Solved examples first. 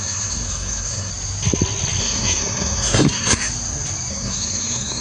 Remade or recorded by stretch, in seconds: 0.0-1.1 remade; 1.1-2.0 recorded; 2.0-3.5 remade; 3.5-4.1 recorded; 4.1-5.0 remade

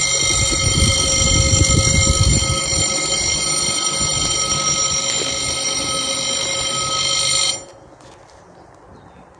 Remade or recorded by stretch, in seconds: 0.0-9.4 recorded